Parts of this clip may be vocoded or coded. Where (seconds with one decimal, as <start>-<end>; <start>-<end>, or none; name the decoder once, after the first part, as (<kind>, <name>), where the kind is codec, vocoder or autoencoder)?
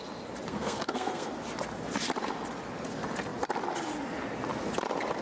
0.5-1.3 (codec, SNAC)